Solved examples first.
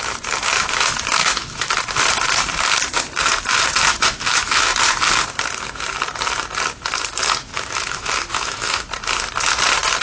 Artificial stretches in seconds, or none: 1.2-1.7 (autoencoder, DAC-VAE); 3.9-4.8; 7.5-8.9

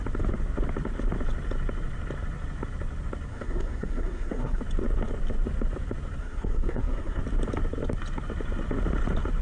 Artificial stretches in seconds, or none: 3.3-4.6 (codec, SNAC); 6.2-7.2

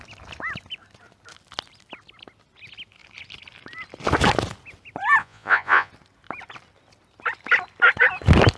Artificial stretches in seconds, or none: 5.2-5.9 (vocoder, Vocos)

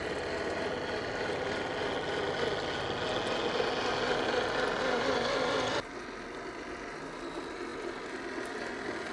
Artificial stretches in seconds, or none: none

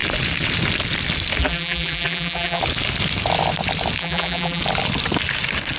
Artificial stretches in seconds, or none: 1.4-2.6 (vocoder, BigVGAN v2); 4.0-4.6